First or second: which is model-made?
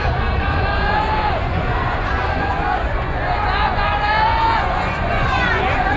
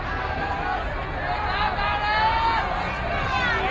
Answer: first